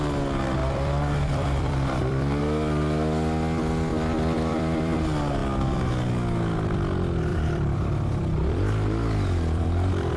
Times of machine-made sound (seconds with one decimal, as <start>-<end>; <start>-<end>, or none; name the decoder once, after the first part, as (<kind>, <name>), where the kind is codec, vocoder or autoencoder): 0.6-2.4 (vocoder, BigVGAN v2); 3.9-5.0; 7.3-10.2